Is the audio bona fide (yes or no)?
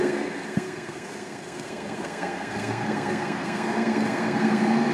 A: no